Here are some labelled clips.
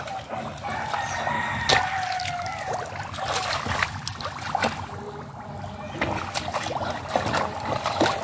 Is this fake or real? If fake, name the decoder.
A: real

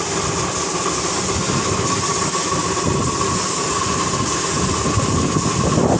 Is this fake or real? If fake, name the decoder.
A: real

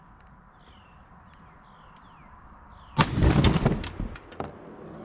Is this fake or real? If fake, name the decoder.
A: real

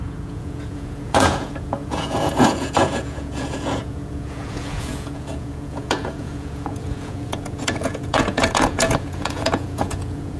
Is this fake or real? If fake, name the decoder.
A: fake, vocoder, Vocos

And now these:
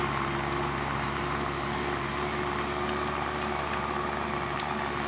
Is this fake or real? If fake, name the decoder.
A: real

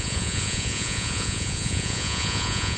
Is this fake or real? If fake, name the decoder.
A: fake, vocoder, Vocos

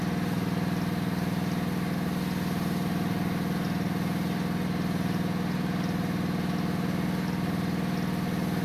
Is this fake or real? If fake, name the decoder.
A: real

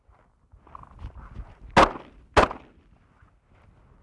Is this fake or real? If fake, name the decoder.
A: real